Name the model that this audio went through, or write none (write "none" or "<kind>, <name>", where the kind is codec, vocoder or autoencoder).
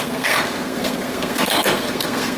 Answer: codec, SNAC